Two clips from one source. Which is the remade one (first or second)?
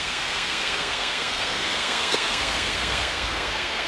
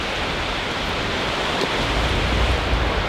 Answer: first